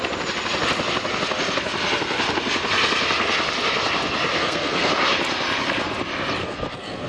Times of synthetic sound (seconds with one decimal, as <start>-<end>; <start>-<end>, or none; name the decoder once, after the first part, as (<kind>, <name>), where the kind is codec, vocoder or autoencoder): 4.3-4.9 (codec, SNAC); 6.4-7.1